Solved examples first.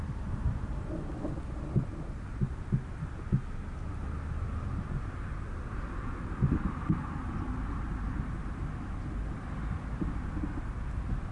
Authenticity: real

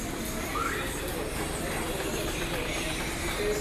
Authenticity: real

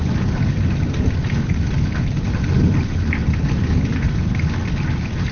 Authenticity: real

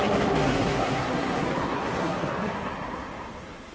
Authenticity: fake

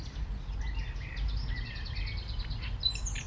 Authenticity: real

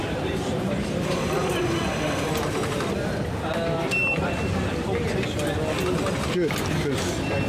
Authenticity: real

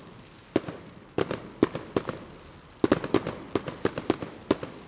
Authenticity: real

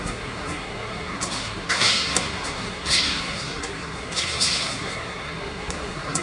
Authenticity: fake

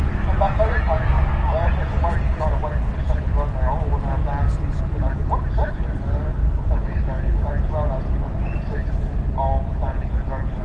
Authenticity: real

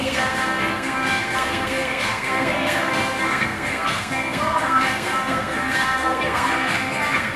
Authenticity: fake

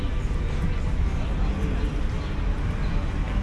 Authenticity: real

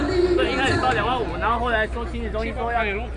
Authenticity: real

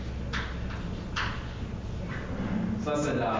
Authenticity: real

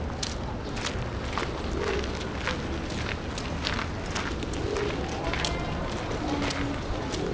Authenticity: real